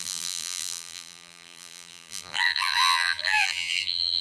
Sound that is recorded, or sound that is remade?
remade